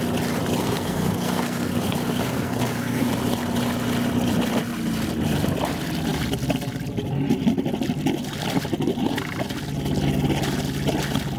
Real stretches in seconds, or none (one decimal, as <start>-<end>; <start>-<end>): 0.0-0.6; 3.1-11.4